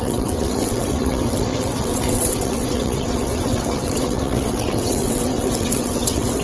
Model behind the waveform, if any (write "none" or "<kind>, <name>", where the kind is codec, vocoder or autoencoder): vocoder, WaveNeXt